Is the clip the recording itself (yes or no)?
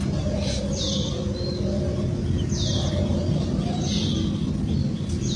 yes